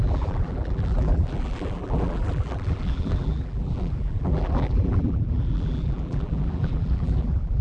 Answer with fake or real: fake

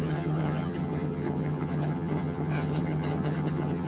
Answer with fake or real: fake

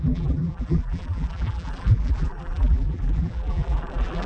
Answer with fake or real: fake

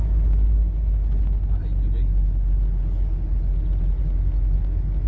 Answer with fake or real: real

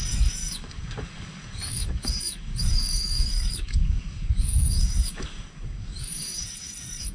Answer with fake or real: fake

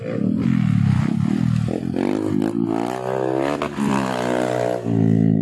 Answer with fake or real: real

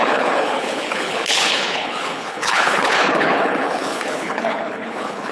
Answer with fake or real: fake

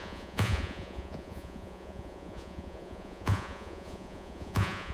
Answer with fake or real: fake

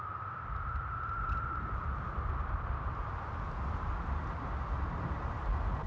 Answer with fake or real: real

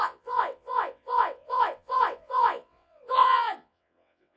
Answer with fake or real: fake